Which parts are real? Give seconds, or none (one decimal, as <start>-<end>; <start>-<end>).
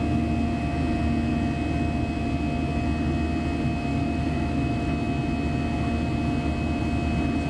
0.0-3.9; 4.9-7.5